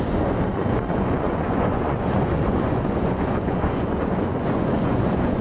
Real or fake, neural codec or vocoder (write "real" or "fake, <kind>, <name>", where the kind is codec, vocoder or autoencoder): fake, vocoder, Vocos